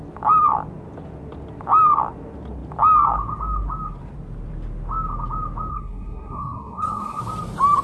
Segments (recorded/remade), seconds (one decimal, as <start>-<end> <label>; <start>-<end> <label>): 0.0-5.7 recorded; 5.7-7.2 remade; 7.2-7.8 recorded